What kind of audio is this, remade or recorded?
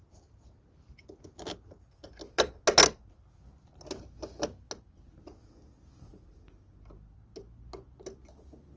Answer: recorded